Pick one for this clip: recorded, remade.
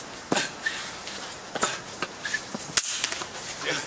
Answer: recorded